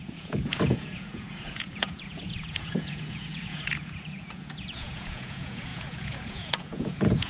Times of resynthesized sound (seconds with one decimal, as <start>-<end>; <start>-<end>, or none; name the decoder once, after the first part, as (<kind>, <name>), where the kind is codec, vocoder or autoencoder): 0.0-7.3 (vocoder, Vocos)